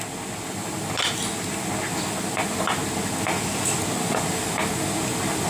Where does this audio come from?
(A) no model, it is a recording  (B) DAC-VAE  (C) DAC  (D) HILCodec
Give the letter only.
A